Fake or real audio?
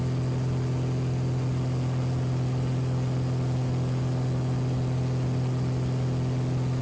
real